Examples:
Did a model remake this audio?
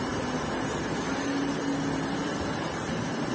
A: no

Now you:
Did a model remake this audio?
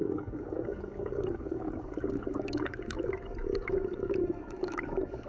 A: yes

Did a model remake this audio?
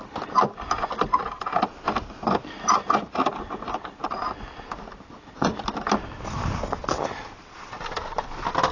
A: no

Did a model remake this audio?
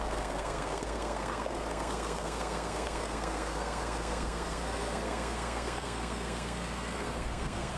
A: yes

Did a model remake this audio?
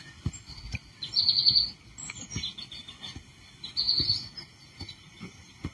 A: no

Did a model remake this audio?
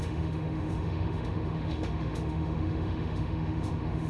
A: yes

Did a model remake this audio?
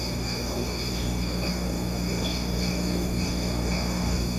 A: yes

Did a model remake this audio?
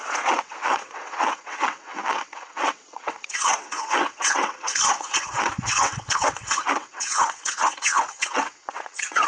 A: yes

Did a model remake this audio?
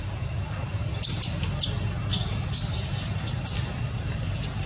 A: no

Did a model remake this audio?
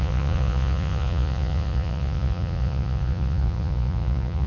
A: yes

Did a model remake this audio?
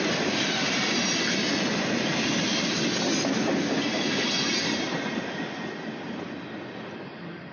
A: no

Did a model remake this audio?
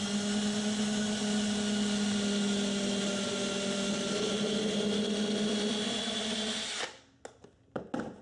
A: no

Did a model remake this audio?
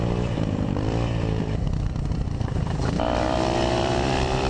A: yes